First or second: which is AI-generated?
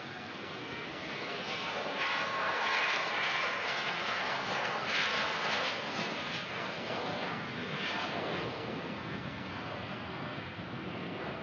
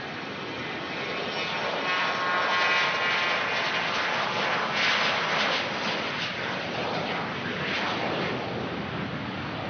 first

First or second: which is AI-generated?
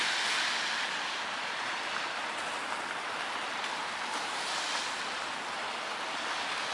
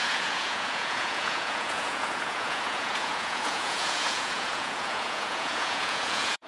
second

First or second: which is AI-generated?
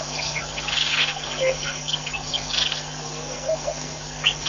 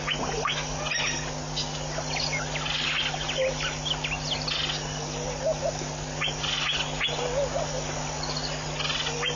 first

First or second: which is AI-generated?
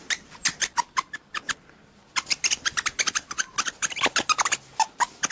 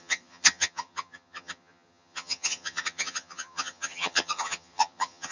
second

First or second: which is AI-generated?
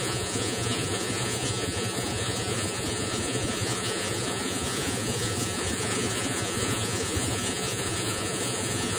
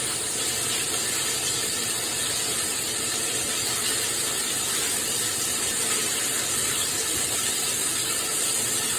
first